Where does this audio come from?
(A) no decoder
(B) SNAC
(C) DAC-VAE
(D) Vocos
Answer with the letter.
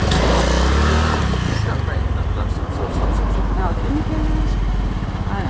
A